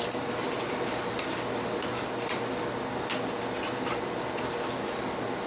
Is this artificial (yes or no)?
no